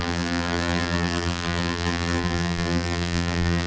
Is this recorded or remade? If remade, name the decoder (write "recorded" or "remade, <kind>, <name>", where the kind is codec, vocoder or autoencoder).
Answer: remade, vocoder, BigVGAN v2